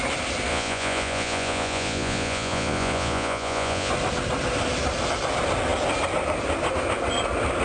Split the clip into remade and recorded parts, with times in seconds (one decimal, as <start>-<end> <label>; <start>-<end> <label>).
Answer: 0.0-0.5 recorded; 0.5-3.9 remade; 3.9-7.6 recorded